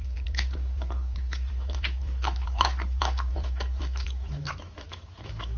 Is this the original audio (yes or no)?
no